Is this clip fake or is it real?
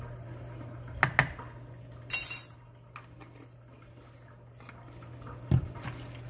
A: real